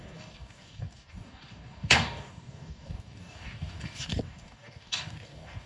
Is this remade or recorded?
remade